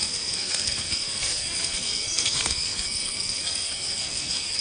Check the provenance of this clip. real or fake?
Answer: fake